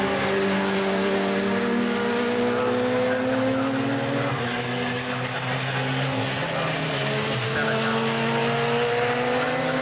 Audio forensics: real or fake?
real